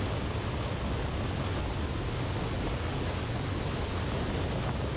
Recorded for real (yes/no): yes